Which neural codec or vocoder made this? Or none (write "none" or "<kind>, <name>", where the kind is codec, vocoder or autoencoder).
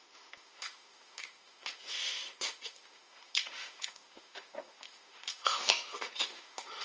autoencoder, DAC-VAE